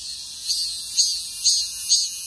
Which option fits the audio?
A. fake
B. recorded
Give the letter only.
B